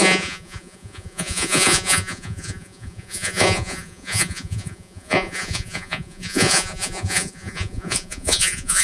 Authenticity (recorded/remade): remade